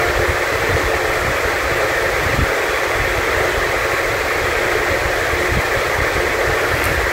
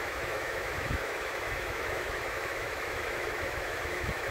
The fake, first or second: second